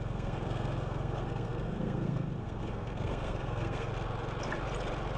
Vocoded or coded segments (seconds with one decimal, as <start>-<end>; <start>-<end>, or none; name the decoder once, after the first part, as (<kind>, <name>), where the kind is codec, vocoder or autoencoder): 0.0-3.9 (codec, SNAC)